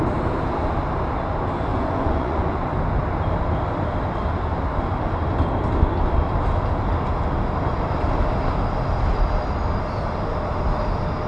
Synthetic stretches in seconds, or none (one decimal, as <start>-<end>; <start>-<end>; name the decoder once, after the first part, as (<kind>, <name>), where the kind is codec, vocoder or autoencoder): 1.7-2.7 (vocoder, Vocos)